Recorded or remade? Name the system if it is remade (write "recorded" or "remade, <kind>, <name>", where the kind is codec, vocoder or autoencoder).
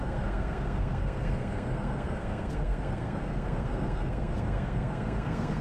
remade, codec, SNAC